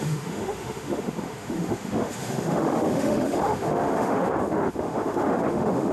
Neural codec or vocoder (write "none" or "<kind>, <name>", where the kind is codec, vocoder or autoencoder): autoencoder, DAC-VAE